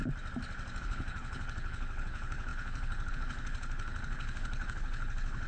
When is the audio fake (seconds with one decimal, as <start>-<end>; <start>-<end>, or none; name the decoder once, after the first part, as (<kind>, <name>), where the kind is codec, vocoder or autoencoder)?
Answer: 0.8-5.5 (codec, HILCodec)